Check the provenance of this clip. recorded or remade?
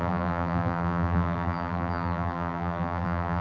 remade